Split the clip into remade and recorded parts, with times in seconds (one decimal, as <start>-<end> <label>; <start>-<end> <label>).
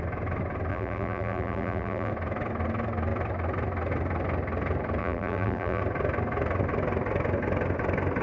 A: 0.0-0.7 recorded; 0.7-2.1 remade; 2.1-5.0 recorded; 5.0-5.8 remade; 5.8-8.2 recorded